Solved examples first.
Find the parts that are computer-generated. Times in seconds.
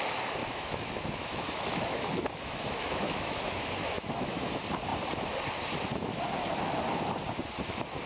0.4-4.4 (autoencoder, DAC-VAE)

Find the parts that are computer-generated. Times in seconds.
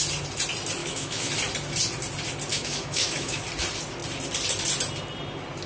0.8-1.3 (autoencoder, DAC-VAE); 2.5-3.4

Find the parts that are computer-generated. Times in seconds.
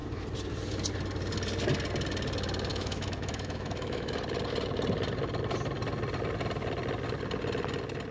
2.7-4.1 (autoencoder, DAC-VAE)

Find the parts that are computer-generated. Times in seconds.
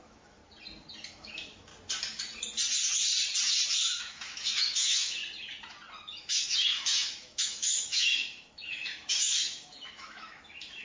0.0-0.4 (autoencoder, DAC-VAE); 1.1-1.7; 3.7-5.2; 6.2-10.8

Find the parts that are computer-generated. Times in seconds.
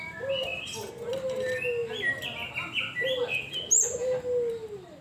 none